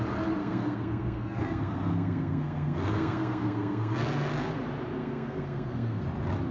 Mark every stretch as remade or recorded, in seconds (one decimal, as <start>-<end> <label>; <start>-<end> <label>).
0.0-0.4 recorded; 0.4-4.3 remade; 4.3-5.0 recorded; 5.0-6.0 remade; 6.0-6.5 recorded